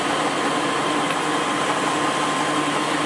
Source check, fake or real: real